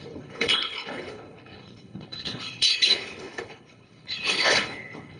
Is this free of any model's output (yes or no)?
no